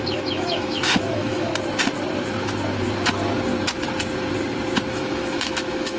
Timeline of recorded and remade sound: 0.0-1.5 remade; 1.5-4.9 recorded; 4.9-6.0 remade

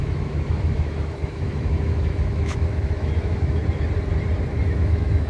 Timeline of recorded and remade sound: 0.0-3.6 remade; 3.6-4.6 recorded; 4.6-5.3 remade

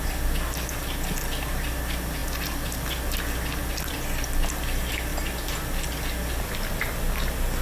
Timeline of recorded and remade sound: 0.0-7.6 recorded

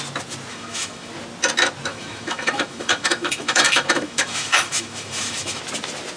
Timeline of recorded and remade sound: 0.0-0.5 recorded; 0.5-1.1 remade; 1.1-1.9 recorded; 1.9-5.6 remade; 5.6-6.2 recorded

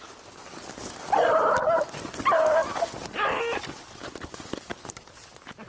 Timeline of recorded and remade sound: 0.0-5.7 recorded